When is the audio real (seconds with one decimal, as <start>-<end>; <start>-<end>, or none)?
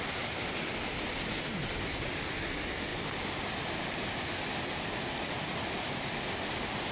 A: 0.0-6.9